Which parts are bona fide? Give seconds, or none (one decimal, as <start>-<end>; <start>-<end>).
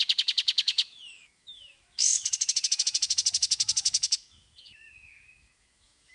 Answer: none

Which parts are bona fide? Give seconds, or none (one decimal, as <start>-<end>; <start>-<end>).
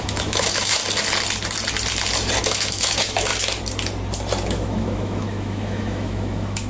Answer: 0.8-2.4; 3.3-4.5